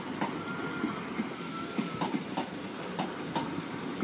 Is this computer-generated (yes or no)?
no